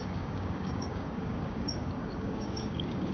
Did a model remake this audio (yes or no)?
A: yes